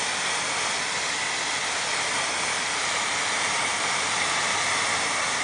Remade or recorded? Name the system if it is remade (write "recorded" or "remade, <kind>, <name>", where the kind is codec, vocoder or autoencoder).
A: recorded